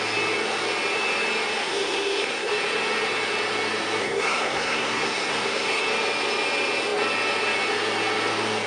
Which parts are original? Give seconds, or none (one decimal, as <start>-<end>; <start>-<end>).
0.0-1.7; 2.5-4.0; 5.8-8.7